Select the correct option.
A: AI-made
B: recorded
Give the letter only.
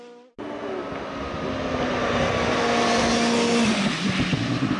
B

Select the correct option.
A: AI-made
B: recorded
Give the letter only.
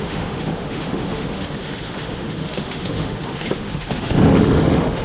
A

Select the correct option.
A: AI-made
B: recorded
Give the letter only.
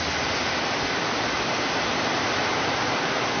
B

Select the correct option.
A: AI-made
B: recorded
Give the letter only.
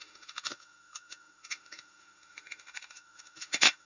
A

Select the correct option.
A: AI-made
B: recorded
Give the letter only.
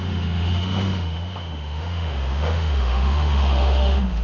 A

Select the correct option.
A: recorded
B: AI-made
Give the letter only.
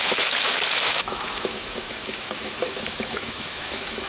B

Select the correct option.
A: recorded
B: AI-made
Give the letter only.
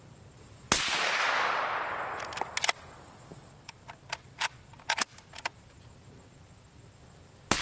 A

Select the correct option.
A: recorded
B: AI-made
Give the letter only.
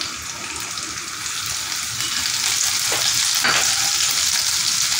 A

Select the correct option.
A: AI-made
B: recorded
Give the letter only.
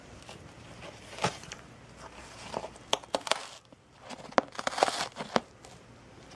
B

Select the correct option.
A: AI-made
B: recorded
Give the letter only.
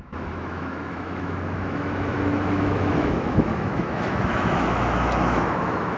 A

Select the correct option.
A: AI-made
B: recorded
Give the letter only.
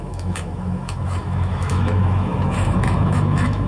A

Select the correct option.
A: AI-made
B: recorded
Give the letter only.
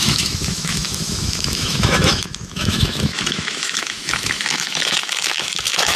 A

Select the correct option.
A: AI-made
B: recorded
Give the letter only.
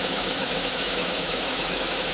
A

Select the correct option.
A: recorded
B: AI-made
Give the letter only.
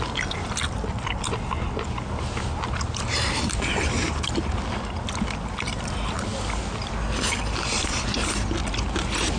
A